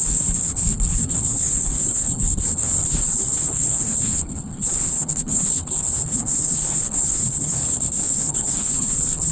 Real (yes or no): no